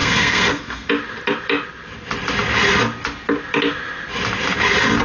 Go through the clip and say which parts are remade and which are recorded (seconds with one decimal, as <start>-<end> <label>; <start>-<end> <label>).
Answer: 0.0-0.9 remade; 0.9-5.0 recorded

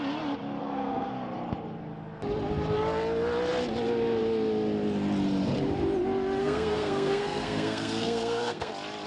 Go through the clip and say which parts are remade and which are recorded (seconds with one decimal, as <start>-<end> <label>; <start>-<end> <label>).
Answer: 0.0-0.6 recorded; 0.6-1.1 remade; 1.1-6.4 recorded; 6.4-8.7 remade; 8.7-9.1 recorded

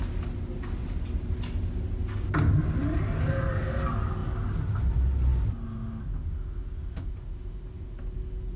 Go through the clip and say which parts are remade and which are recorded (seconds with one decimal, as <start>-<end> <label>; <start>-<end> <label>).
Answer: 0.0-8.6 recorded